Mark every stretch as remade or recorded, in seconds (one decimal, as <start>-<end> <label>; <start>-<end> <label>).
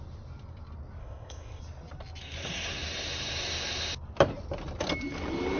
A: 0.0-1.0 recorded; 1.0-1.6 remade; 1.6-5.6 recorded